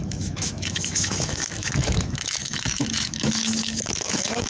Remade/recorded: remade